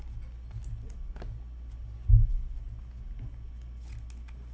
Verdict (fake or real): real